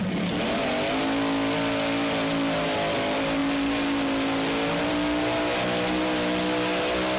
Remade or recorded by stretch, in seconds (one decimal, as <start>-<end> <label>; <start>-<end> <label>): 0.0-7.2 recorded